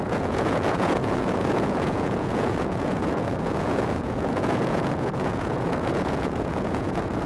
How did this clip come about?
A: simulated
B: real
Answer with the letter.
A